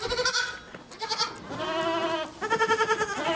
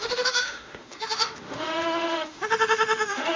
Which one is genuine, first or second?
first